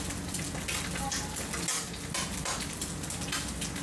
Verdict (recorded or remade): recorded